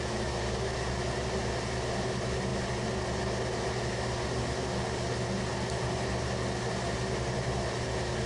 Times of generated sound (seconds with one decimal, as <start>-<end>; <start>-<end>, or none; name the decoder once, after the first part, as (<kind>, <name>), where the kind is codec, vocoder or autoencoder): none